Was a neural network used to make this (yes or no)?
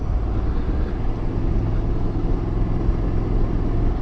no